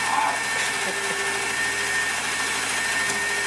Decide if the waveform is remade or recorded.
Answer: recorded